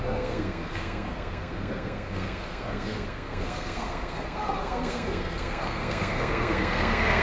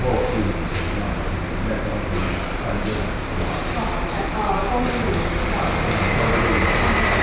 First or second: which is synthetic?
first